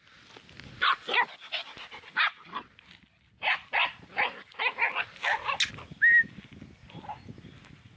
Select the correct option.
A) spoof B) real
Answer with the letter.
B